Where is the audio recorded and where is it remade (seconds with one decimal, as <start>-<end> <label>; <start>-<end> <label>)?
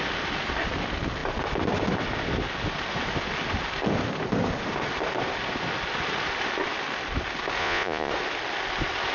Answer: 0.0-7.6 recorded; 7.6-8.1 remade; 8.1-9.1 recorded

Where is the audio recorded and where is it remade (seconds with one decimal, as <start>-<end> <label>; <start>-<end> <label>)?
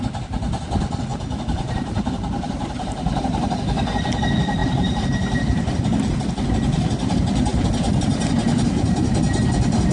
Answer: 0.0-1.1 recorded; 1.1-3.5 remade; 3.5-4.6 recorded; 4.6-6.3 remade; 6.3-7.5 recorded; 7.5-9.2 remade; 9.2-9.9 recorded